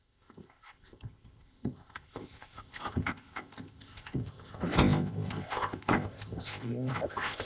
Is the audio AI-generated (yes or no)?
yes